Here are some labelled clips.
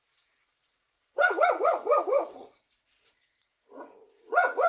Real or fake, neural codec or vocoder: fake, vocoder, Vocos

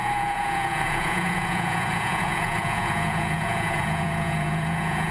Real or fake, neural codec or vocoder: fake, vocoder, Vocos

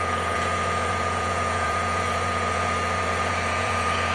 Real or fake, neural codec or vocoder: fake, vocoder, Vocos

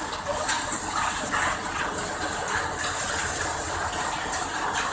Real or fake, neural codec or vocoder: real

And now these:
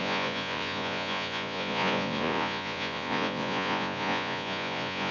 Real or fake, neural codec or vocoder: fake, vocoder, Vocos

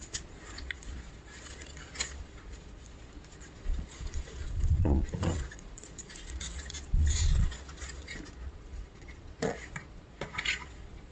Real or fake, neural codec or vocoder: fake, vocoder, Vocos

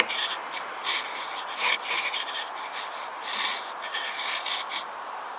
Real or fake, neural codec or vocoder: real